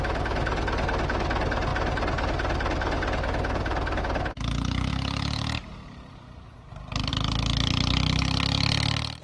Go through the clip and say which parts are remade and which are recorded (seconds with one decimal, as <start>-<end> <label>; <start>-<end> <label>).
0.0-9.2 recorded